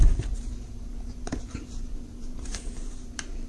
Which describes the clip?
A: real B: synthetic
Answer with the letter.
B